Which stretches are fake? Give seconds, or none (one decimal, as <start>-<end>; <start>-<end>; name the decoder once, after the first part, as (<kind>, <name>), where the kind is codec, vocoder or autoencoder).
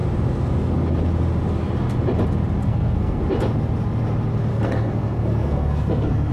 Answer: 2.6-3.2 (codec, SNAC); 4.5-6.3